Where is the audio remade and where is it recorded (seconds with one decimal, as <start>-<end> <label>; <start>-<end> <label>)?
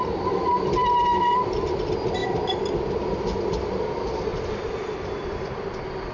0.0-6.1 recorded